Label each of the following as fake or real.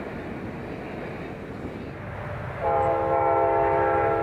real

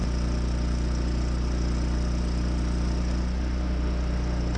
real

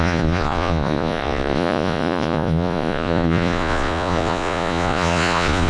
fake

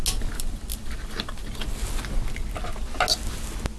real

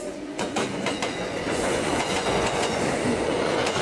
fake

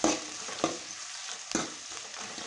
real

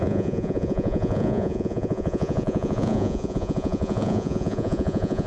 fake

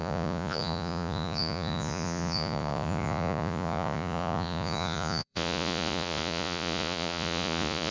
fake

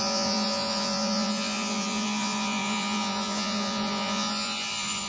fake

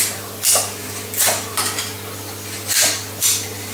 real